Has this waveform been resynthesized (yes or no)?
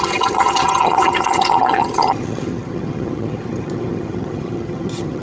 yes